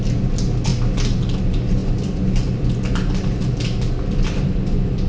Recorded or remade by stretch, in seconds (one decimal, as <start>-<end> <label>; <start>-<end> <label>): 0.0-5.1 recorded